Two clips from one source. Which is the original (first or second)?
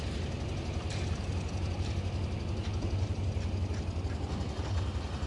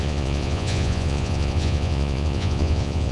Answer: first